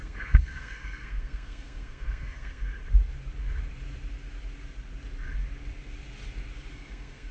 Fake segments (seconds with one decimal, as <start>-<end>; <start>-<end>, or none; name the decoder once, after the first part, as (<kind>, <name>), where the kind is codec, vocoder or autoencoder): 0.0-2.8 (codec, SNAC); 6.7-7.3